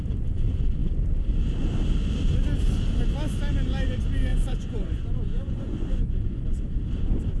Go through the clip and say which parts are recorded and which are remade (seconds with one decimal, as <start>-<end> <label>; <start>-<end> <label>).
0.0-4.3 recorded; 4.3-6.4 remade; 6.4-7.4 recorded